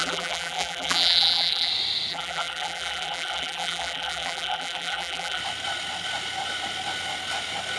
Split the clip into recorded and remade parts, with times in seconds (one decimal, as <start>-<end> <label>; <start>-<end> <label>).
0.0-1.7 remade; 1.7-2.1 recorded; 2.1-5.4 remade; 5.4-7.8 recorded